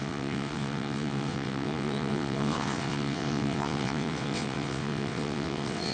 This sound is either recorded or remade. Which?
remade